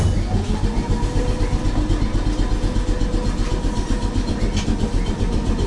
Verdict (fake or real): real